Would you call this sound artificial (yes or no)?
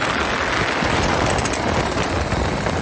no